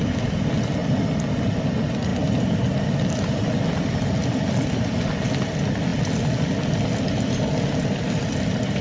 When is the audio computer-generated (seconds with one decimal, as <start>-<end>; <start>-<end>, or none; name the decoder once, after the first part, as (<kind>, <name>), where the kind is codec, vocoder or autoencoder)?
none